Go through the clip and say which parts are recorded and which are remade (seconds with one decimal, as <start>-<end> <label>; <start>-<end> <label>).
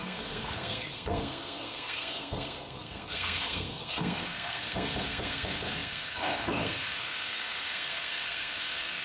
0.0-9.0 remade